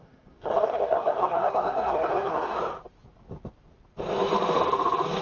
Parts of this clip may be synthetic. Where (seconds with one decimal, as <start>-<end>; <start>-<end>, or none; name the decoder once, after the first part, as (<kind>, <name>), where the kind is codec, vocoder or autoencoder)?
0.0-2.6 (codec, SNAC)